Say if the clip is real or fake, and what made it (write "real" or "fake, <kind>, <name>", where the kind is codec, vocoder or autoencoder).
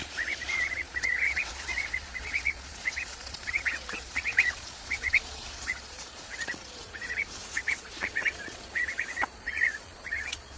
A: fake, vocoder, Vocos